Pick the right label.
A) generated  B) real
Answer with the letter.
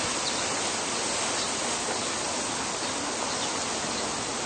B